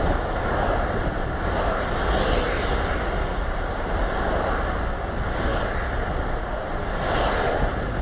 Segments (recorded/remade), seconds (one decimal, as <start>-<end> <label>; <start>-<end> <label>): 0.0-8.0 recorded